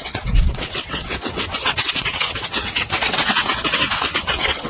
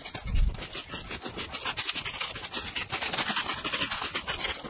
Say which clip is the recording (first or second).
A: second